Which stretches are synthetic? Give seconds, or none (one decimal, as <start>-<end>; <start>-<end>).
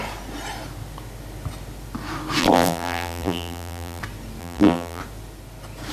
2.4-4.0; 4.4-5.0